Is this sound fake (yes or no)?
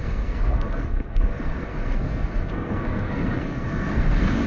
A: yes